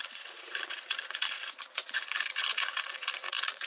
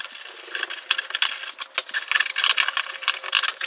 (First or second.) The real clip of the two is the second